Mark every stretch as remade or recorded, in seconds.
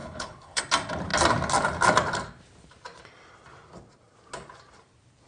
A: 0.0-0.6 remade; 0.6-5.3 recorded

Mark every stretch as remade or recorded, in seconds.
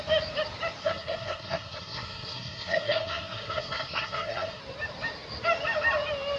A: 0.0-0.8 recorded; 0.8-4.6 remade; 4.6-6.4 recorded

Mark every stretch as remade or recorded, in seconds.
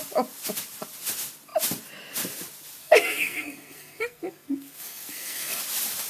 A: 0.0-2.8 recorded; 2.8-5.6 remade; 5.6-6.1 recorded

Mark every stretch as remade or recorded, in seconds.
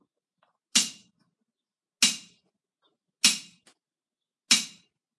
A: 0.0-5.2 recorded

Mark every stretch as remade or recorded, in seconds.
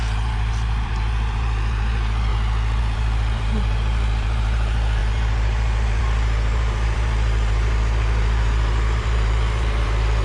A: 0.0-2.3 remade; 2.3-2.8 recorded; 2.8-10.2 remade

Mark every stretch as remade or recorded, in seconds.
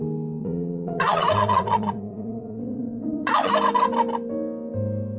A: 0.0-0.4 recorded; 0.4-3.5 remade; 3.5-5.2 recorded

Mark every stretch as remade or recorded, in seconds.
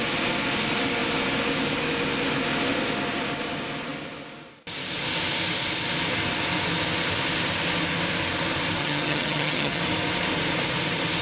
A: 0.0-8.8 recorded; 8.8-9.8 remade; 9.8-11.2 recorded